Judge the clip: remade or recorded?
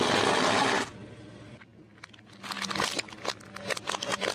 recorded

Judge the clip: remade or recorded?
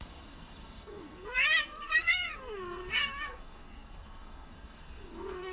remade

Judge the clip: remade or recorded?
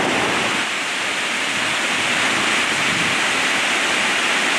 recorded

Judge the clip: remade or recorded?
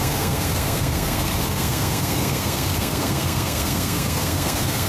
remade